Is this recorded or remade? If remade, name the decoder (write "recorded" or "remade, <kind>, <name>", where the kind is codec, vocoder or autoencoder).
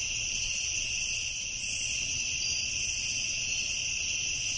recorded